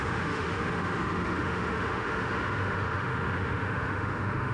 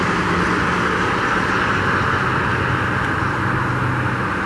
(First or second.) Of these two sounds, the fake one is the first